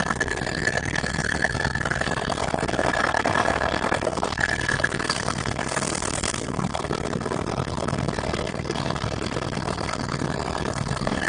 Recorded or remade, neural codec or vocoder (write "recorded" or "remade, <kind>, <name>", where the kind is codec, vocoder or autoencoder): remade, codec, SNAC